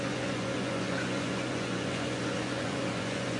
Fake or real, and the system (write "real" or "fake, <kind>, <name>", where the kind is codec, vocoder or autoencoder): fake, vocoder, Vocos